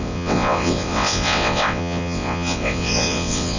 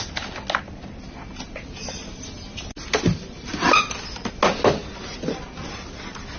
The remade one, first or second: first